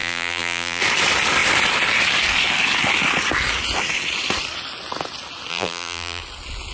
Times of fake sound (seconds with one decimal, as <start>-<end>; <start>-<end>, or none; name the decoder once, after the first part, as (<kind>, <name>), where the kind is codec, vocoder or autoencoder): 0.0-0.8 (vocoder, BigVGAN v2); 5.5-6.2